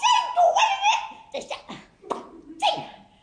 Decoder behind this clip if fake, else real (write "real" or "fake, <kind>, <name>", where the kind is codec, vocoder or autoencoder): real